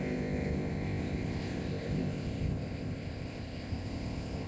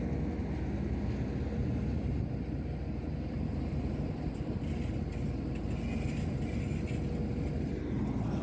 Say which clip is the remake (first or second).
first